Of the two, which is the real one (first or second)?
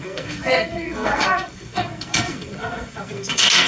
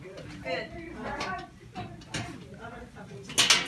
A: second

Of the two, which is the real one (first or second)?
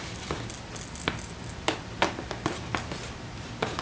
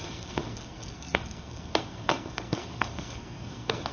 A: first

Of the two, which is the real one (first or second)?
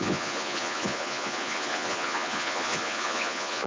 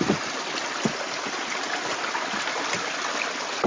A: second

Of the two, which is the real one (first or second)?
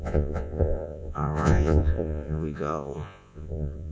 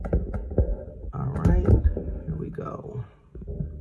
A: second